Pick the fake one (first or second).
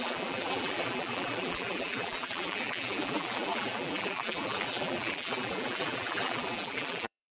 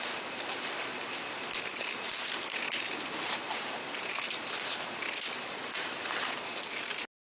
first